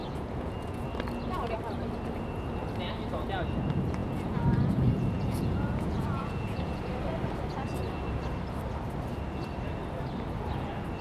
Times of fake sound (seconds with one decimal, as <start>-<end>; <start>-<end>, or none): 0.0-0.8; 4.0-6.8